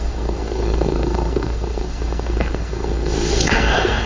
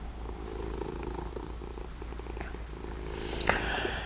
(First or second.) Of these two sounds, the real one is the second